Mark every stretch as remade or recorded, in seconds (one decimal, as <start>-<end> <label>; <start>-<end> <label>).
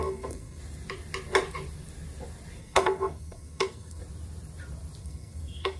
0.0-0.6 remade; 0.6-2.6 recorded; 2.6-4.0 remade; 4.0-5.0 recorded; 5.0-5.8 remade